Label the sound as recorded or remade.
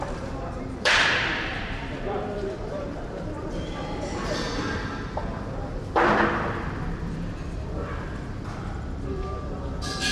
remade